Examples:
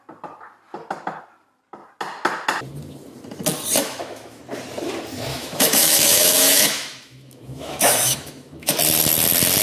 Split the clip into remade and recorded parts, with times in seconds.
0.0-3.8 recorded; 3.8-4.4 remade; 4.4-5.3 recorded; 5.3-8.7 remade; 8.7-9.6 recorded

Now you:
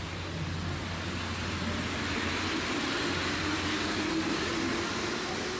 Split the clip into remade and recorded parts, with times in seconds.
0.0-5.6 recorded

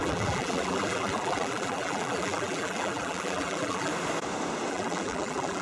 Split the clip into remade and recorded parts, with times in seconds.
0.0-3.9 remade; 3.9-4.7 recorded; 4.7-5.6 remade

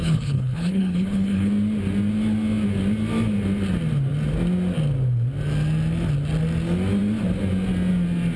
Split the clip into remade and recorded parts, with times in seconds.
0.0-1.5 remade; 1.5-8.4 recorded

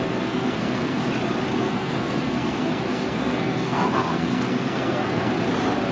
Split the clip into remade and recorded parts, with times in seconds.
0.0-1.0 remade; 1.0-1.6 recorded; 1.6-5.3 remade; 5.3-5.9 recorded

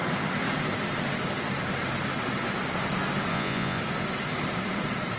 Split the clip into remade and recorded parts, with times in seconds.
0.0-3.3 recorded; 3.3-3.8 remade; 3.8-5.2 recorded